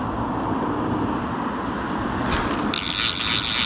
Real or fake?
real